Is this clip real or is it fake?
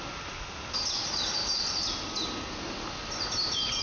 real